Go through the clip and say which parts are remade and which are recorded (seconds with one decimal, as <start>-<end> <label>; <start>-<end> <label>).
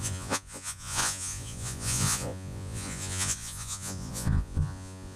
0.0-5.2 remade